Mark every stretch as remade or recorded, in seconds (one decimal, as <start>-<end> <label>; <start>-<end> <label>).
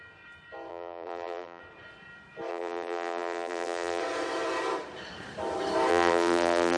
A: 0.0-0.7 recorded; 0.7-1.6 remade; 1.6-2.5 recorded; 2.5-4.0 remade; 4.0-5.9 recorded; 5.9-6.8 remade